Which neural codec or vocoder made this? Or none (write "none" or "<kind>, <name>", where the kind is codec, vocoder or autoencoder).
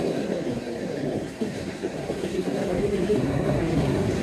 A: codec, SNAC